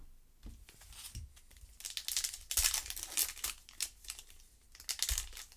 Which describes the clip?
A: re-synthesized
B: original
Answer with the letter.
B